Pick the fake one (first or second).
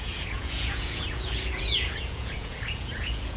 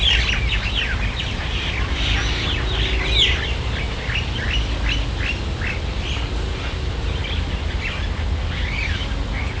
first